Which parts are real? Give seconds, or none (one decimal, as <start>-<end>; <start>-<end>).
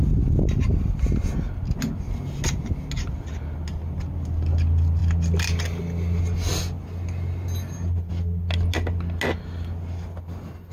0.0-10.7